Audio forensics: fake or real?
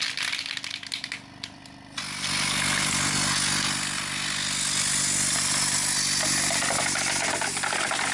real